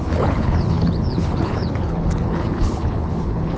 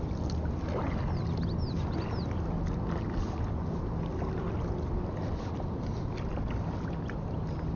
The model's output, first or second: first